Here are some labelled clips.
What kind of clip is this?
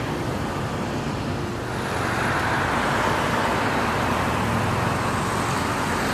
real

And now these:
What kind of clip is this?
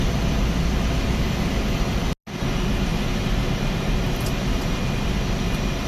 real